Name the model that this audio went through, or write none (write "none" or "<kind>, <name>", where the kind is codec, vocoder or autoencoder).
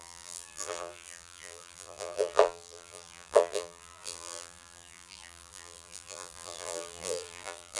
vocoder, BigVGAN v2